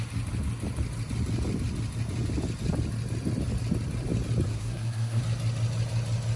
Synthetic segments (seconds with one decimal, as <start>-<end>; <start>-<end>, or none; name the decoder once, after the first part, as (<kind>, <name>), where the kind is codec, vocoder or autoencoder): 4.5-5.2 (codec, SNAC)